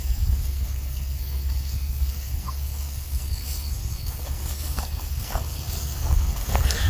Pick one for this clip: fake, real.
fake